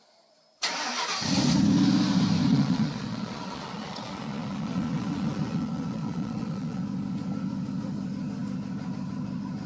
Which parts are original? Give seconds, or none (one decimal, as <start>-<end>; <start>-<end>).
0.0-2.5; 6.8-9.7